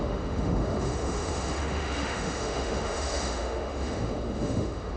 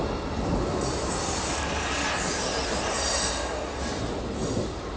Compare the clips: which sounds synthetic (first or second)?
first